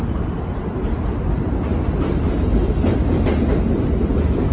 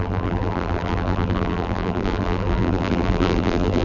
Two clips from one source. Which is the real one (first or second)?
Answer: first